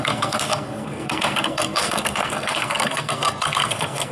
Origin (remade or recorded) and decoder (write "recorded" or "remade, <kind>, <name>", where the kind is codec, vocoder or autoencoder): remade, codec, SNAC